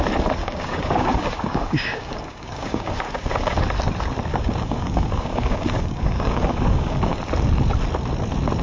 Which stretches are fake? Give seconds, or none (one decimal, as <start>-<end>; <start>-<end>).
0.4-3.6; 4.3-7.2